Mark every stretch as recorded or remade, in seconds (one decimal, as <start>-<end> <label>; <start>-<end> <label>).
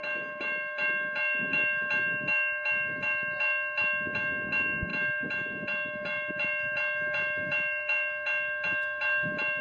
0.0-9.6 recorded